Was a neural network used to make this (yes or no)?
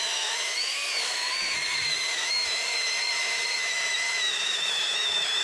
yes